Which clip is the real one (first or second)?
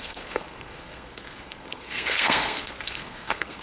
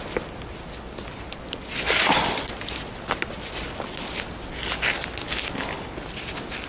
second